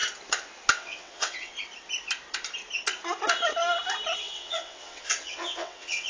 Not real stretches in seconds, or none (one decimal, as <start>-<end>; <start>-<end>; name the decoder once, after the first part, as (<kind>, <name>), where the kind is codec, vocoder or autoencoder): 0.7-1.5 (vocoder, WaveNeXt); 4.2-6.1